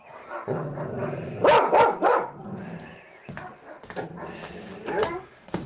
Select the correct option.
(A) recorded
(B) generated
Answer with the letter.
A